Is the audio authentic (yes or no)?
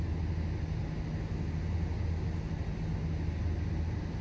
yes